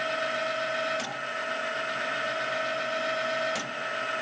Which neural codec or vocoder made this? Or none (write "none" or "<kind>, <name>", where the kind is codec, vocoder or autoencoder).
none